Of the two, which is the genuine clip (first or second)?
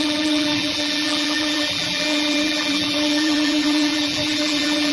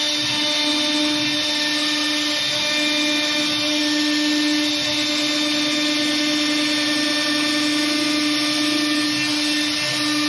second